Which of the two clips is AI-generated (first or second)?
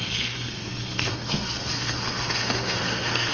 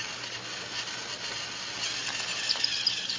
first